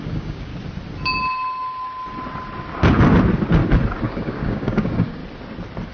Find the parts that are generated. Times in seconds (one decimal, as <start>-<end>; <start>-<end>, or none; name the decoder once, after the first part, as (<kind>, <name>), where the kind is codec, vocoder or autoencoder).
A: 0.0-0.5 (codec, DAC); 4.0-5.2